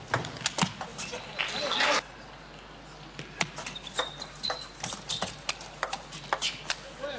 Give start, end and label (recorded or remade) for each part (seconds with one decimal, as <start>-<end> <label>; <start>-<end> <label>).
0.0-7.2 recorded